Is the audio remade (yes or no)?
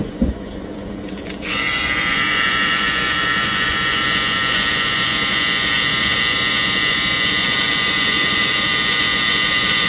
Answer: yes